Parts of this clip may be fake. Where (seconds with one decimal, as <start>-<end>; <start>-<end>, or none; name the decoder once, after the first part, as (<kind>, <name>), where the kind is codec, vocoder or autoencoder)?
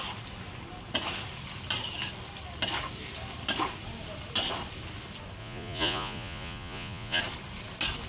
5.4-7.2 (vocoder, Vocos)